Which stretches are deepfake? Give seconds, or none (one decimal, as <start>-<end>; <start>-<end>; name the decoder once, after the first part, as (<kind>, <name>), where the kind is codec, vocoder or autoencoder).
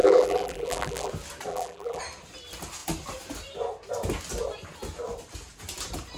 0.0-1.1 (vocoder, BigVGAN v2); 1.5-2.0